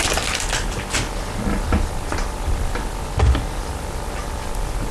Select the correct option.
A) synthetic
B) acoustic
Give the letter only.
B